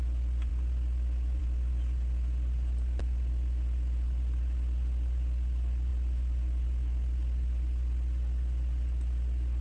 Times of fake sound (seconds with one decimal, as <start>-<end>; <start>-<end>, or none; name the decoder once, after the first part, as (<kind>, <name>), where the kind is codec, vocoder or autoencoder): none